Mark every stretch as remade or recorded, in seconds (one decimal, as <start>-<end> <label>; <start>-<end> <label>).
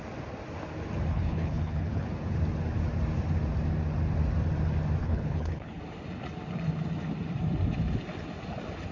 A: 0.0-1.1 recorded; 1.1-2.1 remade; 2.1-5.0 recorded; 5.0-5.8 remade; 5.8-8.9 recorded